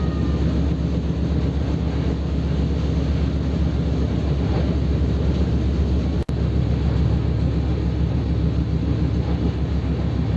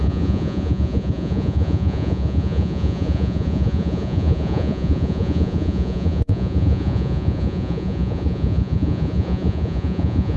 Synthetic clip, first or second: second